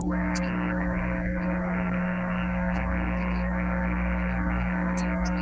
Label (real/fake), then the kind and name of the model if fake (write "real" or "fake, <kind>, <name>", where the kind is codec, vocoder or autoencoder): fake, codec, SNAC